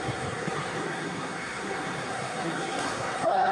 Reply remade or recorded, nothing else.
remade